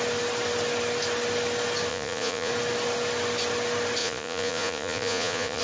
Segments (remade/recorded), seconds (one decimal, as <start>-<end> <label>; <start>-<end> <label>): 0.0-1.9 recorded; 1.9-2.5 remade; 2.5-4.0 recorded; 4.0-5.6 remade